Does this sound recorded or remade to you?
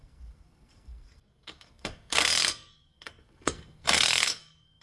remade